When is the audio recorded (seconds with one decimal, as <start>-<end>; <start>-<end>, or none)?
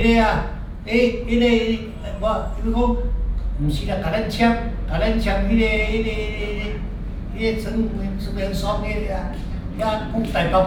0.0-10.7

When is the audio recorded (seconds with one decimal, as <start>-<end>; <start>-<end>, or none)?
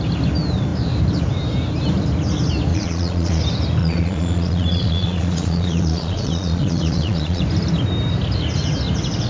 0.0-2.7; 3.4-3.8; 7.4-9.3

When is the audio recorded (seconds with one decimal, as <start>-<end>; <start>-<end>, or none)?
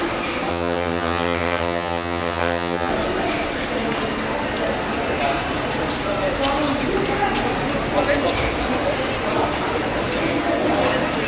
0.0-0.5; 2.9-11.3